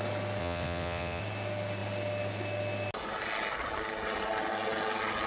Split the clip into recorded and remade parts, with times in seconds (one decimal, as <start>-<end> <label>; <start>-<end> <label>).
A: 0.0-0.4 recorded; 0.4-1.2 remade; 1.2-5.3 recorded